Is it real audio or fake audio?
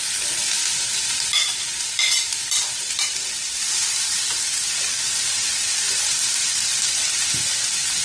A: fake